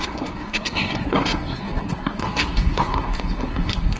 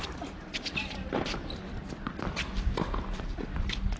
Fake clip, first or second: first